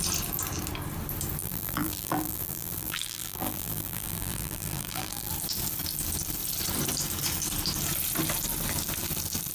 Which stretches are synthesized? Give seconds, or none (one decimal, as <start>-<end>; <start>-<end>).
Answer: 1.4-5.3